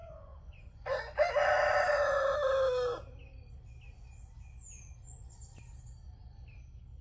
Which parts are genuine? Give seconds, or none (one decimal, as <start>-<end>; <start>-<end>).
1.3-7.0